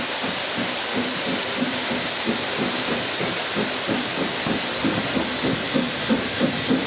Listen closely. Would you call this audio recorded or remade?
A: remade